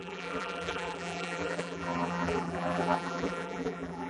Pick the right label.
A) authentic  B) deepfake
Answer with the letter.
B